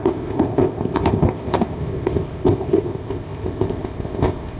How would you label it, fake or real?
fake